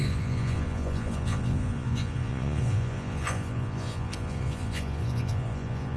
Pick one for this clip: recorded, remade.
remade